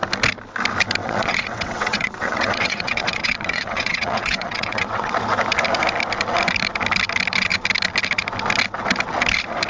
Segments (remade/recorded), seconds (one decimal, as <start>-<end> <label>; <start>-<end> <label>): 0.0-1.0 recorded; 1.0-5.1 remade; 5.1-9.7 recorded